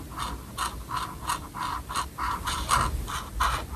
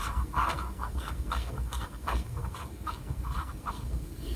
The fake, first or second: second